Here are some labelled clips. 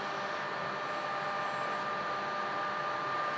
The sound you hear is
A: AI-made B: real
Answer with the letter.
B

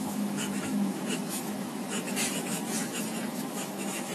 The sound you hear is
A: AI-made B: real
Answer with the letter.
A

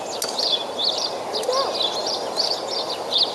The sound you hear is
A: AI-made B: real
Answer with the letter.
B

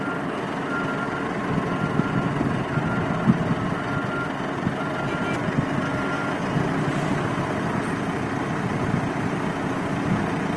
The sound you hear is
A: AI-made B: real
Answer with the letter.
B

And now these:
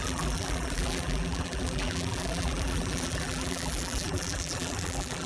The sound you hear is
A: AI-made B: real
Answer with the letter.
A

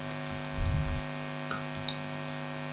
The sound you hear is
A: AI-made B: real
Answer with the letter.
B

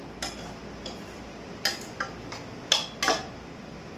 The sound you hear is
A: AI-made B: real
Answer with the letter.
B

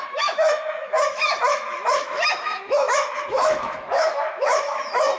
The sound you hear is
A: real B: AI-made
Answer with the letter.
B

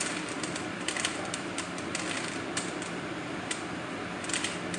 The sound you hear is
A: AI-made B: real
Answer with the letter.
B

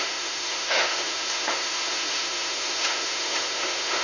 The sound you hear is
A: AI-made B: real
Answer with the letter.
A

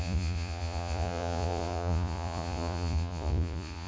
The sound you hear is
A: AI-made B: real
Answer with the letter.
A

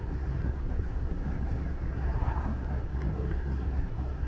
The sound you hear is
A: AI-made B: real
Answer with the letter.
A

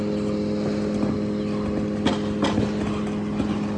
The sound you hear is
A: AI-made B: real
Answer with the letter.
B